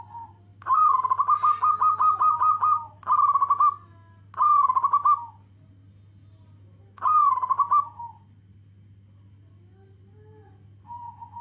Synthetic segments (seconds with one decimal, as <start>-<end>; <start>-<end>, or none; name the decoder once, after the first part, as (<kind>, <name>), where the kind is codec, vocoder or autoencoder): none